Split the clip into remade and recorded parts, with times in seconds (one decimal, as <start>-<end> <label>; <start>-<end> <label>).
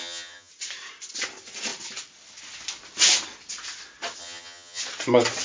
0.0-0.5 remade; 0.5-4.2 recorded; 4.2-4.8 remade; 4.8-5.4 recorded